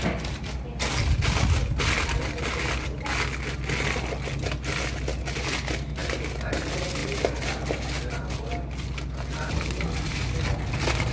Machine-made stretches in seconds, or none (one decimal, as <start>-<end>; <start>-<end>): none